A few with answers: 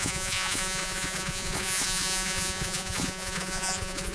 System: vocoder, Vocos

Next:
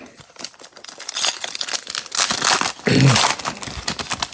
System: none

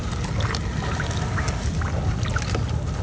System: none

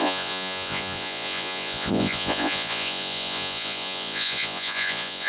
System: vocoder, Vocos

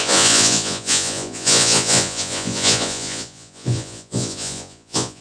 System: vocoder, Vocos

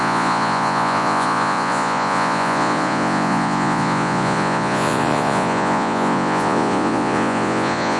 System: vocoder, Vocos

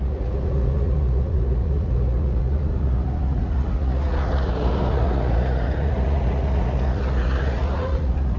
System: vocoder, Vocos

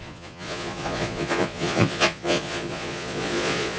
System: vocoder, Vocos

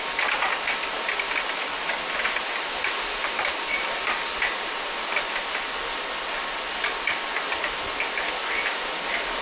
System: none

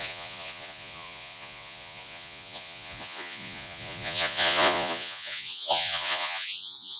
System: vocoder, Vocos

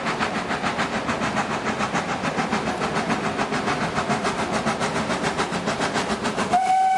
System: none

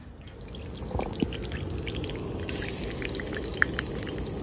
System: none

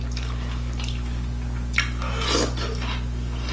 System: none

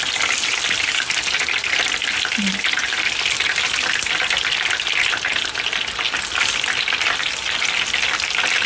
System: none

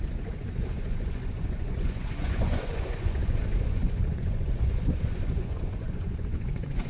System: vocoder, Vocos